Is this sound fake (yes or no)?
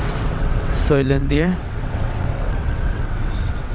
yes